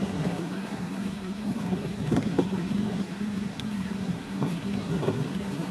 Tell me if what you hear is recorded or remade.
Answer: remade